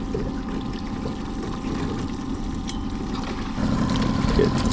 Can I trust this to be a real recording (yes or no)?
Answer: yes